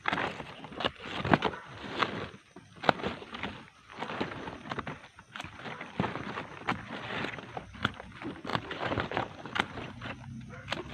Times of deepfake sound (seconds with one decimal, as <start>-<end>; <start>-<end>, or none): none